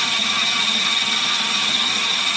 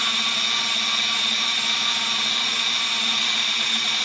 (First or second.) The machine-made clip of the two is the first